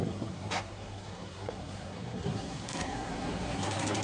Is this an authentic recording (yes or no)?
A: no